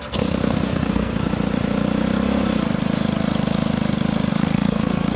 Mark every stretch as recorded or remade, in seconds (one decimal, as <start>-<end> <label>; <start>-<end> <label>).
0.0-1.2 remade; 1.2-4.3 recorded; 4.3-5.2 remade